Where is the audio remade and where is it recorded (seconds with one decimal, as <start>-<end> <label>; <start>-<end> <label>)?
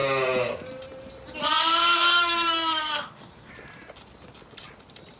0.0-1.6 recorded; 1.6-3.5 remade; 3.5-5.2 recorded